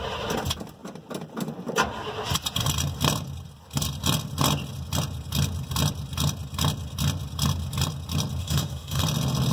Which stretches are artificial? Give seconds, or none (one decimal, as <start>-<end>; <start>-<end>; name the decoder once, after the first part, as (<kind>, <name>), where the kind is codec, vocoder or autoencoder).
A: 8.4-9.0 (autoencoder, DAC-VAE)